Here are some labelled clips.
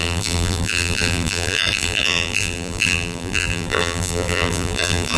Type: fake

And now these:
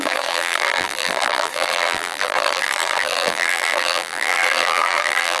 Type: fake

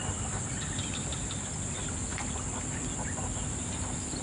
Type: real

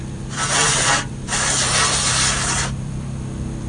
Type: fake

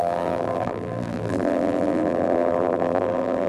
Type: fake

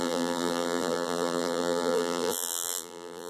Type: fake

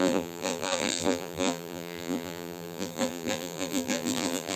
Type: fake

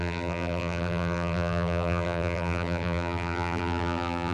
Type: fake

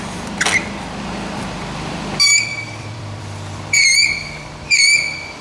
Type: fake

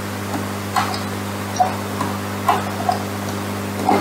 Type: real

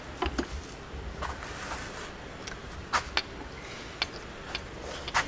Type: real